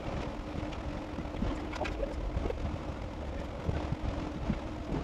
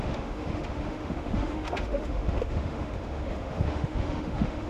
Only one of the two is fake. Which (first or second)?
second